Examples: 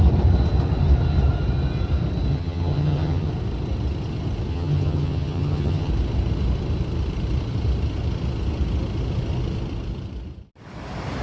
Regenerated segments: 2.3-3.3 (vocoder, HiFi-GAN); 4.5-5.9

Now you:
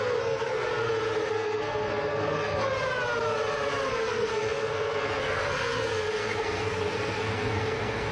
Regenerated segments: 0.0-0.7 (codec, SNAC); 1.3-2.7; 3.9-8.1

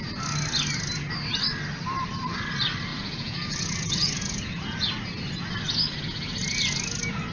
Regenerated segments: 2.9-5.0 (vocoder, Vocos)